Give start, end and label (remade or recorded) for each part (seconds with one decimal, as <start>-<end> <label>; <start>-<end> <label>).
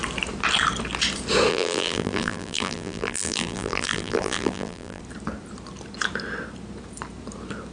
0.0-1.5 recorded; 1.5-5.0 remade; 5.0-7.7 recorded